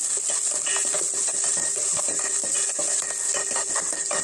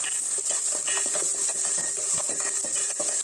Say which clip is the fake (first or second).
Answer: second